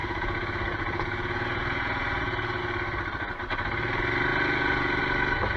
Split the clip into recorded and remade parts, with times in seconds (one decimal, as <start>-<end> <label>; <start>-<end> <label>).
0.0-2.6 remade; 2.6-4.3 recorded; 4.3-5.0 remade; 5.0-5.6 recorded